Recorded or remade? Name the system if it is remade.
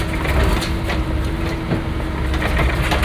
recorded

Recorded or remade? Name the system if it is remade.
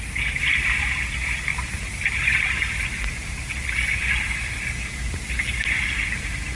recorded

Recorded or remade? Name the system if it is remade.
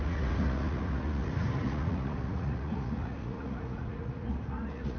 remade, vocoder, Vocos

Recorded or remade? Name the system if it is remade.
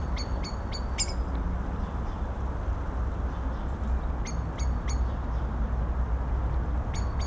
recorded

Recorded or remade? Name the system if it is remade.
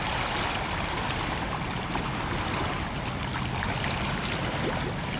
recorded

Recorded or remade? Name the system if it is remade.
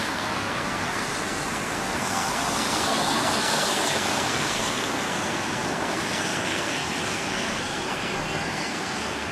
remade, codec, SNAC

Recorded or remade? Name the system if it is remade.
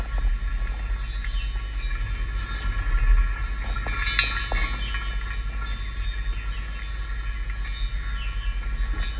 recorded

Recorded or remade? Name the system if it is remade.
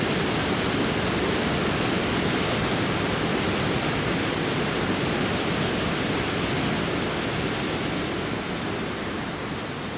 recorded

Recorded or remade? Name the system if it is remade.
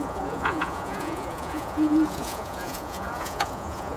remade, vocoder, Vocos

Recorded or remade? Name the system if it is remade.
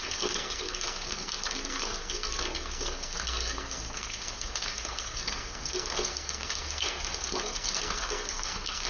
remade, codec, SNAC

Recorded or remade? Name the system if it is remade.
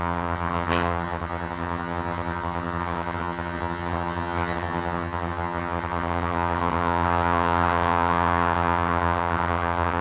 remade, vocoder, HiFi-GAN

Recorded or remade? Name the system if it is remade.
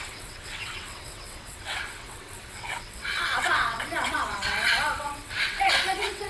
remade, vocoder, WaveNeXt